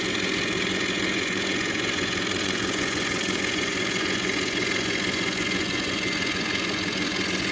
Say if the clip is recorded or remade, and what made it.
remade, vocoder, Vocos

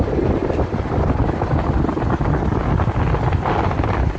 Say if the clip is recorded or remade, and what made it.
recorded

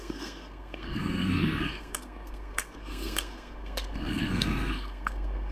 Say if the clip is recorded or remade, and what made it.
remade, codec, SNAC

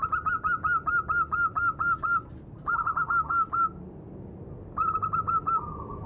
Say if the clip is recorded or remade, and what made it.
recorded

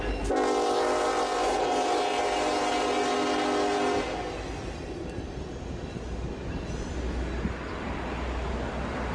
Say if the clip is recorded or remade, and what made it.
recorded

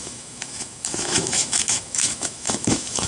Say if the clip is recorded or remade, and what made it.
remade, autoencoder, DAC-VAE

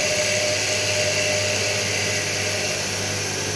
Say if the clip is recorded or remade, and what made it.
recorded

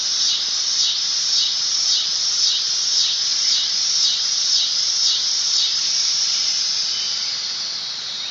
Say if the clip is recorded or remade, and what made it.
remade, vocoder, BigVGAN v2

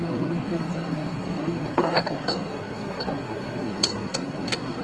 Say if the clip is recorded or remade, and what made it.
remade, codec, SNAC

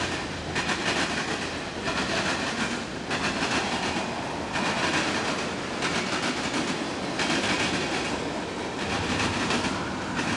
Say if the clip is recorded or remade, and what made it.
recorded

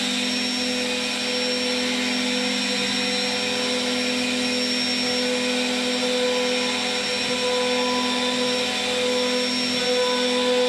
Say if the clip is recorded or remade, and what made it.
recorded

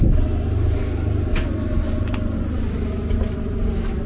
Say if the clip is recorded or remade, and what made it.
recorded